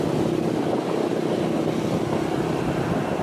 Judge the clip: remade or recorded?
recorded